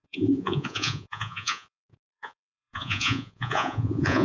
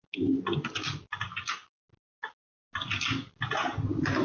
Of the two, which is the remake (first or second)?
first